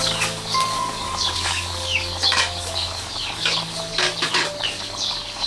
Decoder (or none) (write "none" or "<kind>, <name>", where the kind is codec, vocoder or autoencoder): codec, DAC